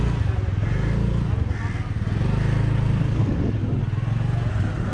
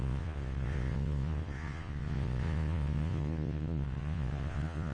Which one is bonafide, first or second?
first